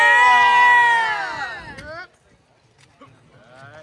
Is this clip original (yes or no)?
yes